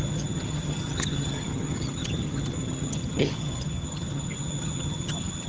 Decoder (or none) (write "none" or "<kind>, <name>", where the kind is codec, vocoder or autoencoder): vocoder, HiFi-GAN